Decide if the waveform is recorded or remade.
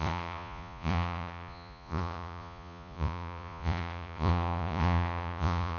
remade